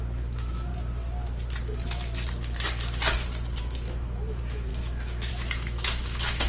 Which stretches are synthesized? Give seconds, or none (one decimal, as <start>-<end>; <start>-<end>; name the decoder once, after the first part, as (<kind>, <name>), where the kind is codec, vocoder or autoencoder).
0.0-0.7 (autoencoder, DAC-VAE); 3.6-6.5